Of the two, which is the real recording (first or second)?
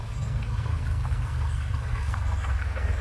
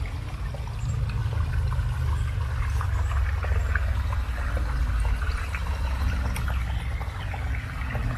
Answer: second